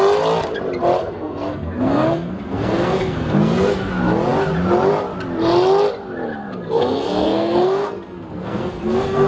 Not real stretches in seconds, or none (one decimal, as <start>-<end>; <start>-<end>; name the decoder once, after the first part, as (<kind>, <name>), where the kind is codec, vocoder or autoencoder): 1.0-3.9 (codec, SNAC); 6.4-9.3